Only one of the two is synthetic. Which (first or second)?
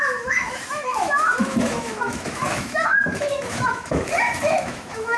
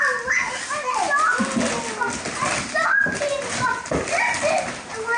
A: first